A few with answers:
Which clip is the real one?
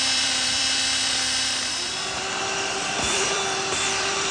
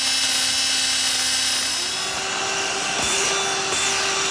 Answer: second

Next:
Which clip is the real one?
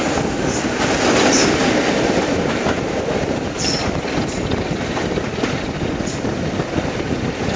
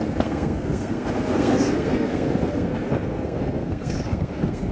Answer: first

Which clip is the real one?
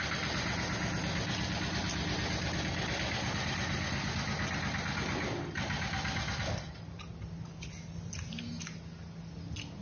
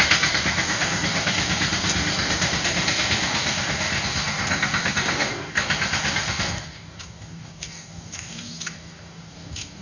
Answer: first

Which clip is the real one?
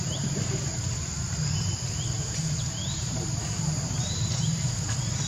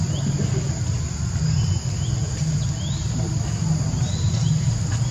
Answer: second